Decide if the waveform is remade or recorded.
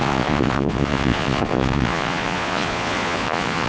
remade